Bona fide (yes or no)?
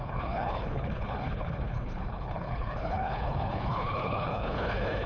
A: no